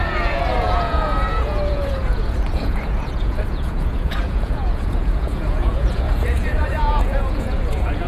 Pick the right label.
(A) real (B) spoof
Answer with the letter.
B